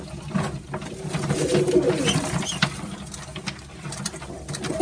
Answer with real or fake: real